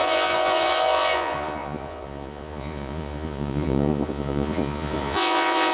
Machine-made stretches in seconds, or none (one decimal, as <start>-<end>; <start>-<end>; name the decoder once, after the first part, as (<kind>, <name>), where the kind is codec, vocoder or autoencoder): 0.0-5.7 (vocoder, Vocos)